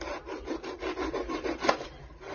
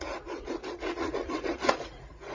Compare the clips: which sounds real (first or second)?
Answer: first